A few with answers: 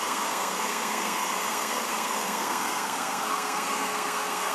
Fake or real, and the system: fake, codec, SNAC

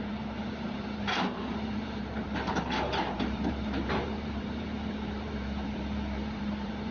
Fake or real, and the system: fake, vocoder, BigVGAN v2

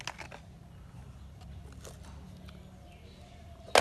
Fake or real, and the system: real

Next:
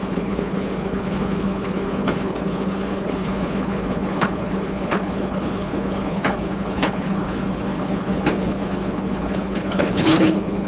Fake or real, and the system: fake, codec, HILCodec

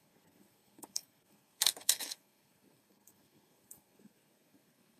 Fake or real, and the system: fake, codec, SNAC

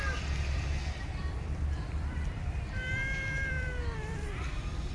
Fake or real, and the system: fake, vocoder, BigVGAN v2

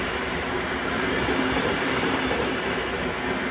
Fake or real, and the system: real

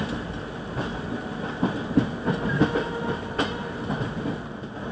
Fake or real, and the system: real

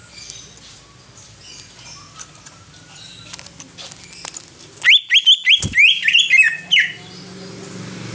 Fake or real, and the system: real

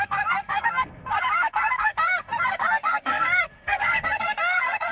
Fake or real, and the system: fake, codec, SNAC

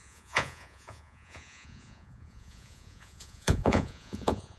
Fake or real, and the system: fake, vocoder, Vocos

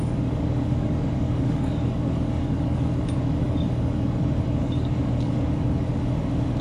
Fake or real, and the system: fake, codec, DAC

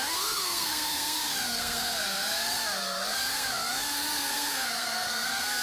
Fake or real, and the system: fake, codec, SNAC